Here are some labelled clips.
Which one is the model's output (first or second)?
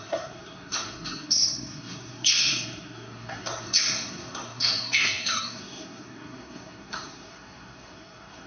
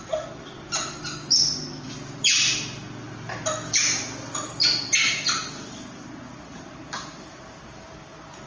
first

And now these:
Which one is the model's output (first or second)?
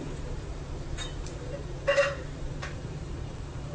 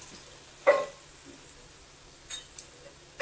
first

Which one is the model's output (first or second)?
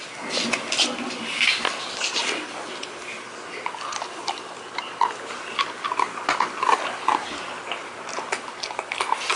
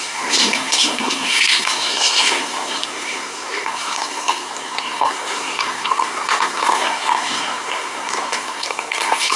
second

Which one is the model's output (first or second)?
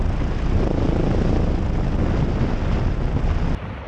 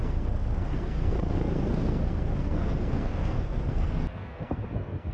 second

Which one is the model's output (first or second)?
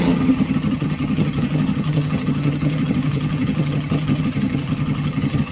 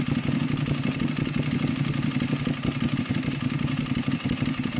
first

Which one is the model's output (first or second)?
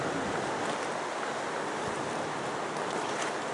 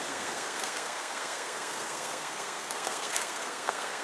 second